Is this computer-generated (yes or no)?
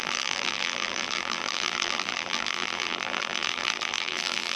yes